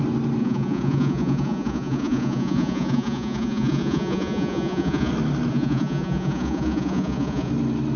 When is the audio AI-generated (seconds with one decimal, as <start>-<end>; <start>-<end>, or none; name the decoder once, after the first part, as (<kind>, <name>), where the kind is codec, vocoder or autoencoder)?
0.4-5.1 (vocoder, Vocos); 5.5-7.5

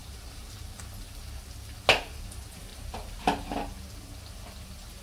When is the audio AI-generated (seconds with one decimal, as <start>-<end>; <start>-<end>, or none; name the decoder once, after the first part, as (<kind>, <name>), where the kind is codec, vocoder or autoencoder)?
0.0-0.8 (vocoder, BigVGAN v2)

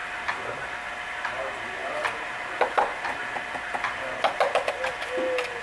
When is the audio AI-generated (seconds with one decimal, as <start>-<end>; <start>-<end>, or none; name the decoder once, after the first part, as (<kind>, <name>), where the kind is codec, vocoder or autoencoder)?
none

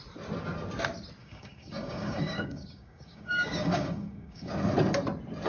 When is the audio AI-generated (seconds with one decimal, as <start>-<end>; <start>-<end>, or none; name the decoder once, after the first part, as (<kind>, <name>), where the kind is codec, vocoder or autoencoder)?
1.2-4.5 (codec, DAC)

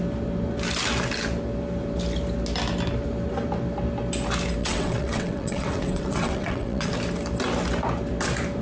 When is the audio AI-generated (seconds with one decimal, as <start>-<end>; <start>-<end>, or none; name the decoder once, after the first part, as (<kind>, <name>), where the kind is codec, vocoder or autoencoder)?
4.6-6.9 (vocoder, WaveNeXt)

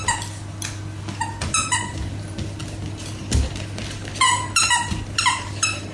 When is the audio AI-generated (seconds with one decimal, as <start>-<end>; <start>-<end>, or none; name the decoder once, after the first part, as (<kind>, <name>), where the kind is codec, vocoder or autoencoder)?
none

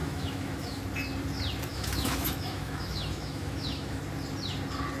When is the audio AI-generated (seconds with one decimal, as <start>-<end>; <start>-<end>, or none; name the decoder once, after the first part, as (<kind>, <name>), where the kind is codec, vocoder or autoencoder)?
0.0-0.8 (autoencoder, DAC-VAE); 1.7-4.0